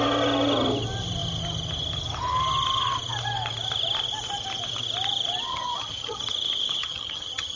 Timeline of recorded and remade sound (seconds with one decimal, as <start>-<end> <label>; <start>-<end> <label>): 0.0-5.5 recorded; 5.5-6.2 remade; 6.2-6.8 recorded; 6.8-7.6 remade

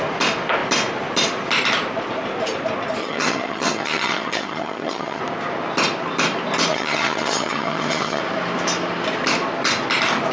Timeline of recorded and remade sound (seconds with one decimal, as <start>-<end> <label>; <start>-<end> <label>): 0.0-3.0 recorded; 3.0-5.2 remade; 5.2-6.7 recorded; 6.7-8.2 remade; 8.2-10.3 recorded

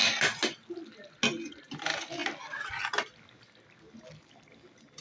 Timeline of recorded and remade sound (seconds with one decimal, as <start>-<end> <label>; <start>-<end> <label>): 0.0-5.0 recorded

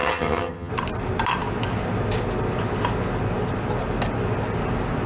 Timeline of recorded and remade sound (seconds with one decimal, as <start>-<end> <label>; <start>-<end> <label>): 0.0-0.7 remade; 0.7-5.1 recorded

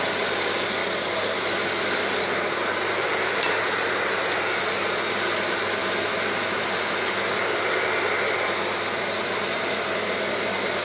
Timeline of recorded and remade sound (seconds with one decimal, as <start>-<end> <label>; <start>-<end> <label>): 0.0-10.8 recorded

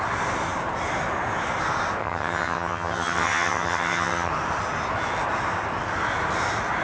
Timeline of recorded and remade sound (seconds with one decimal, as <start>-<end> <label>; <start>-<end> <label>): 0.0-2.0 recorded; 2.0-4.3 remade; 4.3-6.8 recorded